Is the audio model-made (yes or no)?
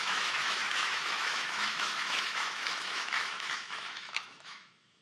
yes